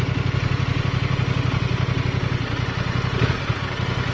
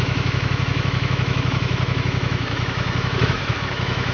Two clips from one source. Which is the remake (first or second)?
second